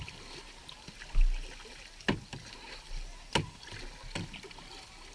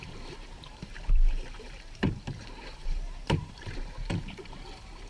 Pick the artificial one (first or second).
second